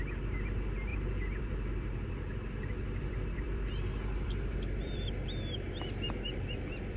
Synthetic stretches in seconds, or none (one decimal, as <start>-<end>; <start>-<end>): 0.9-5.1